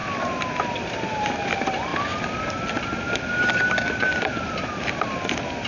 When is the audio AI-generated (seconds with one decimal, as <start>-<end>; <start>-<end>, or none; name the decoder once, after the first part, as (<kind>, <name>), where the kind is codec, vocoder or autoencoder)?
none